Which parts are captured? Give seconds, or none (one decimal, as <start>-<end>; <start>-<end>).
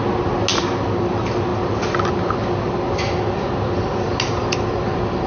0.0-5.3